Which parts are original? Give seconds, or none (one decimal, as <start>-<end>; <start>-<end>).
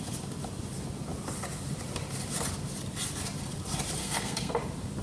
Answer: 0.0-4.0; 4.5-5.0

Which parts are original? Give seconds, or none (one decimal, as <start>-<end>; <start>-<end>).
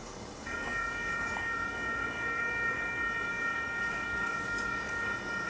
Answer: 2.9-3.3; 5.1-5.5